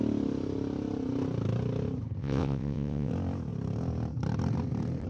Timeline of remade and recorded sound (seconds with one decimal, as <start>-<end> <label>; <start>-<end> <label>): 0.0-2.2 recorded; 2.2-3.1 remade; 3.1-5.1 recorded